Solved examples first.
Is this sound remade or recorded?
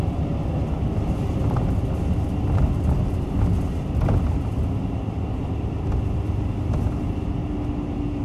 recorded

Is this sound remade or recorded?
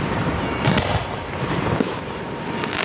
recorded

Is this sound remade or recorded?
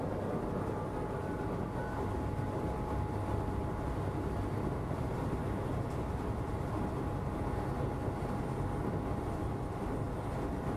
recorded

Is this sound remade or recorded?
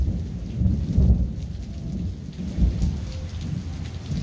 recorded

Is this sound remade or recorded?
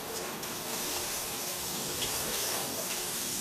remade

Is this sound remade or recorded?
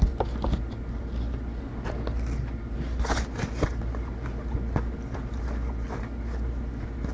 recorded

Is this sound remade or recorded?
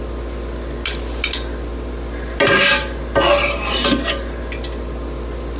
recorded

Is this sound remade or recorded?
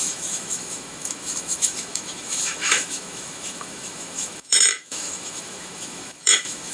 remade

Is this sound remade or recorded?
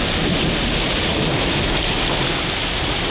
recorded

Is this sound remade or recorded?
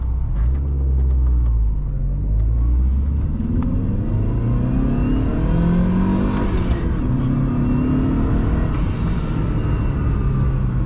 recorded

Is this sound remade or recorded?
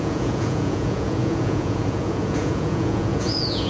remade